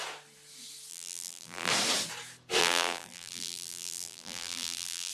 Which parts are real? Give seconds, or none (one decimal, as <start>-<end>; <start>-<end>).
0.0-0.9; 1.7-2.6